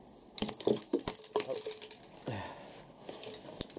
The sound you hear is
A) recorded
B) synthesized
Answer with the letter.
A